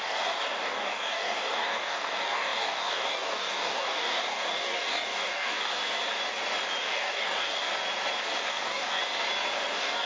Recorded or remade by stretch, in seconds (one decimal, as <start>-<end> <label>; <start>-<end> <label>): 0.0-5.8 remade; 5.8-6.8 recorded; 6.8-7.7 remade; 7.7-8.5 recorded; 8.5-9.0 remade; 9.0-9.7 recorded; 9.7-10.1 remade